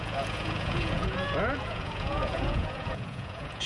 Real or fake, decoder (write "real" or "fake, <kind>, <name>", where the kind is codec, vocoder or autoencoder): fake, vocoder, Vocos